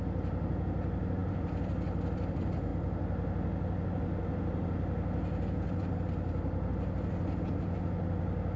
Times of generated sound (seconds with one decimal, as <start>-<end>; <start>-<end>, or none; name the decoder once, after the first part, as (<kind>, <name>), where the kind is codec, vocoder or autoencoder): none

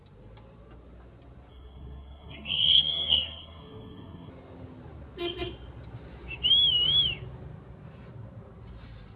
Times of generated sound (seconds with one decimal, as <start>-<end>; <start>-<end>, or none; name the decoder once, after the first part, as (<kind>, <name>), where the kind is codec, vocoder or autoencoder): 1.5-4.3 (codec, SNAC)

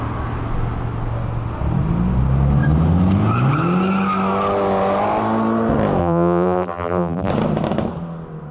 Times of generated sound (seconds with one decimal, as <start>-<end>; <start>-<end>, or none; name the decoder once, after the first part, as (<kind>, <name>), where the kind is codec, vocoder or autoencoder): 6.0-7.3 (vocoder, BigVGAN v2)

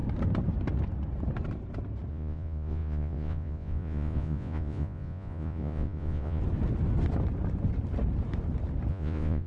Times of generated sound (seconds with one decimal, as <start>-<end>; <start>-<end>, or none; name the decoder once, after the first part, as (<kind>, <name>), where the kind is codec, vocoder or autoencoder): 2.1-6.4 (vocoder, Vocos); 8.9-9.5

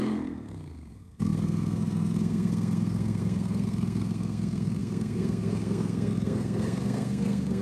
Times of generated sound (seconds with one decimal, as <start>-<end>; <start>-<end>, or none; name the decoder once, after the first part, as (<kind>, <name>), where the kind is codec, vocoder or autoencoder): 0.0-7.6 (codec, SNAC)